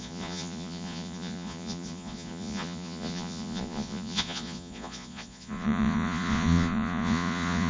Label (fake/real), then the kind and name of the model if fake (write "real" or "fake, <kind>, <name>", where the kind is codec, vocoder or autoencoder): fake, vocoder, Vocos